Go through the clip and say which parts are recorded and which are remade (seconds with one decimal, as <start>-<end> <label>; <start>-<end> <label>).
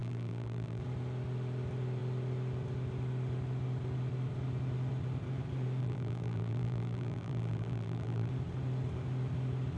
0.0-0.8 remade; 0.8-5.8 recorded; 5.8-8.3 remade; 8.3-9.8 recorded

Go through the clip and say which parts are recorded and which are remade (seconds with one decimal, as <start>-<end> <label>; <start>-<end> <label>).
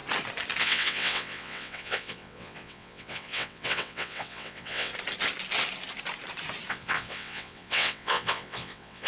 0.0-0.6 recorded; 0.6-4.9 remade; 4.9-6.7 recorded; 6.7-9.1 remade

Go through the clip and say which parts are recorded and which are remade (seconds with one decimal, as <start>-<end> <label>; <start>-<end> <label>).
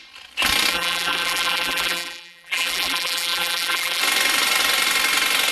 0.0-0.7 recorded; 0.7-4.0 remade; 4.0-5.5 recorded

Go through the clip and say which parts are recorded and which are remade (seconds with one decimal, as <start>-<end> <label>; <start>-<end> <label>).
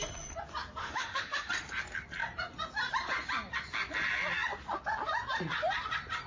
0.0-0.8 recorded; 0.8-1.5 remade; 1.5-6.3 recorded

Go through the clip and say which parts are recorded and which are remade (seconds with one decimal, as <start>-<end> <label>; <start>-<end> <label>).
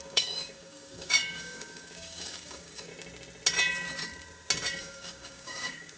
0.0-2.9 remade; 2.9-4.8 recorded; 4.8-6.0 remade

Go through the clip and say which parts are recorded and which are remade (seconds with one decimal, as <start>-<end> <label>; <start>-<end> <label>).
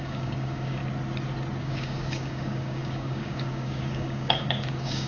0.0-0.8 remade; 0.8-1.6 recorded; 1.6-5.1 remade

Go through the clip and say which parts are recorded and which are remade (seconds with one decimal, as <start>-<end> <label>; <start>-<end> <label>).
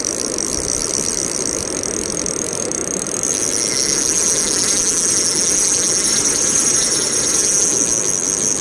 0.0-2.8 remade; 2.8-6.1 recorded; 6.1-7.4 remade; 7.4-8.6 recorded